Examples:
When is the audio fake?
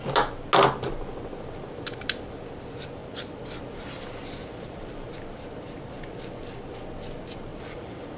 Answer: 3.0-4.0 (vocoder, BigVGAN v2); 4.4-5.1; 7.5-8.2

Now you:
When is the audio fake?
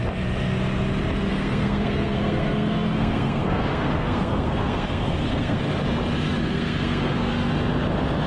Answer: 1.3-5.6 (codec, SNAC); 6.4-7.3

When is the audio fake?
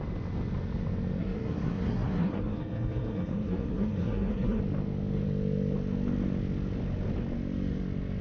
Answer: 1.2-4.6 (codec, SNAC)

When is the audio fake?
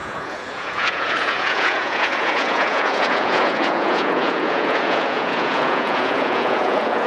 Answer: 0.0-7.1 (vocoder, Vocos)